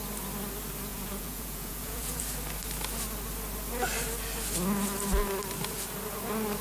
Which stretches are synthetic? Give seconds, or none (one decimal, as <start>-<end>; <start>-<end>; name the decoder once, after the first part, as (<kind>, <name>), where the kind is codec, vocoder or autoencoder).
0.9-2.2 (vocoder, Vocos)